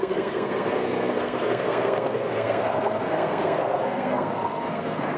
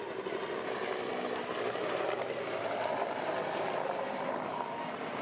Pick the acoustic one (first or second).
second